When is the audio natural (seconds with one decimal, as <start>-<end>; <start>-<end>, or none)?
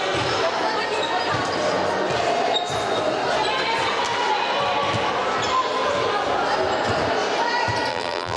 0.0-7.9